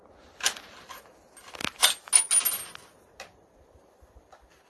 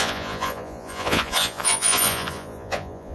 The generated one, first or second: second